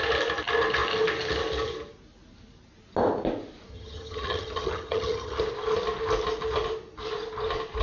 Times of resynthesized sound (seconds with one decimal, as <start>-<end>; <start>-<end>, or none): 3.7-5.4